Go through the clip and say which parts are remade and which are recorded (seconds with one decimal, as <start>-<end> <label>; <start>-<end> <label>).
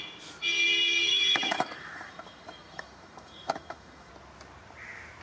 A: 0.0-1.0 recorded; 1.0-4.1 remade; 4.1-5.2 recorded